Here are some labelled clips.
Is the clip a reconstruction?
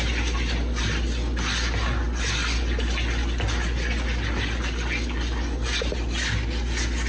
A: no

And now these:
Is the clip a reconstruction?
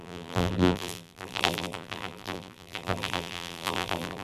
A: yes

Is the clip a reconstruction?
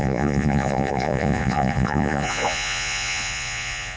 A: yes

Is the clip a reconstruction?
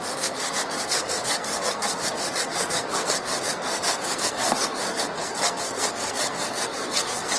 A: yes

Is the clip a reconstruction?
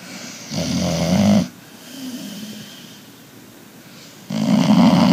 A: no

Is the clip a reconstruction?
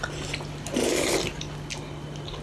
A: no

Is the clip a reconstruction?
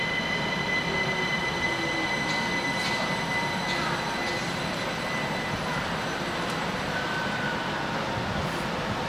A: no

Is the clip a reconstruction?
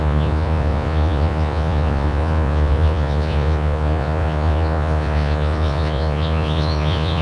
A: yes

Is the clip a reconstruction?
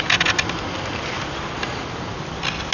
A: no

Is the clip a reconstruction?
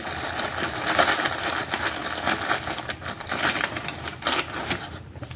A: no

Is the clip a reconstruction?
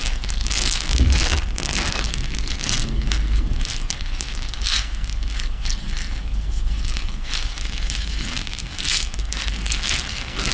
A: yes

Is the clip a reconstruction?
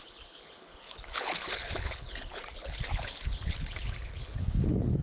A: yes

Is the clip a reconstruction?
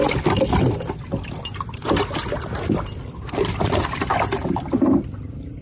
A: no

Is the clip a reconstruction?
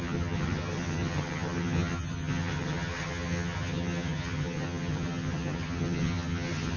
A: yes